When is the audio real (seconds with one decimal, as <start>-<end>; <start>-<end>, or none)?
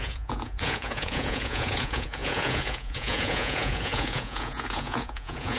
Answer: none